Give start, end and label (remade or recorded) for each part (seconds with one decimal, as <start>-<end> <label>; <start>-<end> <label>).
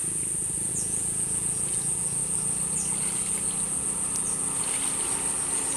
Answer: 0.0-0.7 recorded; 0.7-2.2 remade; 2.2-5.8 recorded